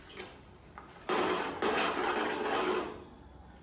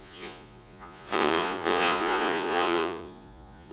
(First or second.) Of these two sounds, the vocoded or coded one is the second